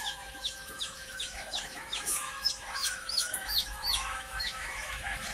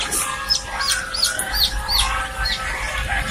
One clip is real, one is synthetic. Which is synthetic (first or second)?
first